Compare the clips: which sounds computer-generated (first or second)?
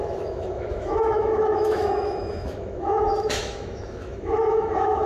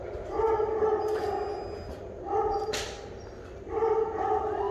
first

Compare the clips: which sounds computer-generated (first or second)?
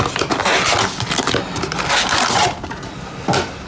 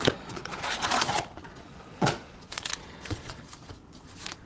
second